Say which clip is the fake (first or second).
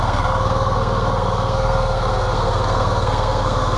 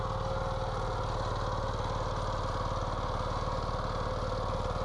first